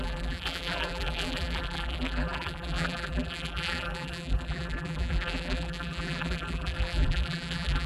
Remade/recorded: remade